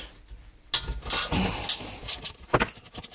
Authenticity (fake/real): real